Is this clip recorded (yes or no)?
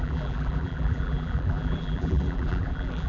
no